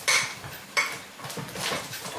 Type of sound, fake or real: fake